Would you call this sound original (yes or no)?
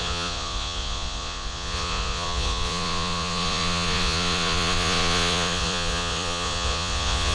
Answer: no